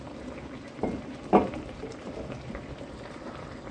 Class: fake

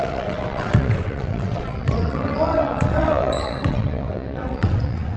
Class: fake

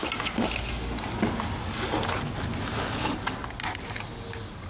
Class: real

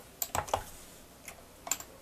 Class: real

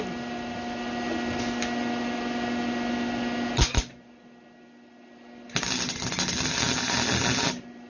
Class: real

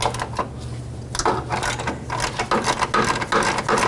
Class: real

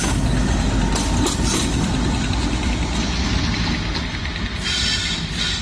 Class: real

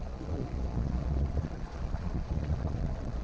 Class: fake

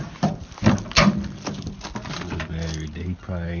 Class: real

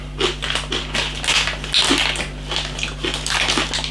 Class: real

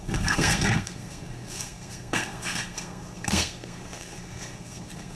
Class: fake